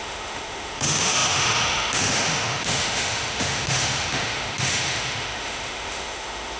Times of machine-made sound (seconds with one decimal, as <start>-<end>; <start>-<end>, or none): 0.0-6.6